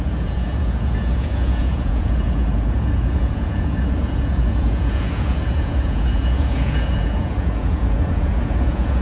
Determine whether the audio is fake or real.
fake